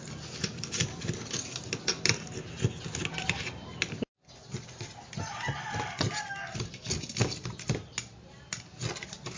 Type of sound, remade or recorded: recorded